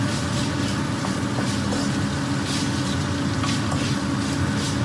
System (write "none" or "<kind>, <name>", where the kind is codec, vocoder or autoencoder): none